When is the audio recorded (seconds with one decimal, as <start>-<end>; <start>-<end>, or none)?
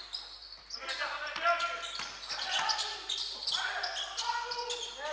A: 0.0-5.1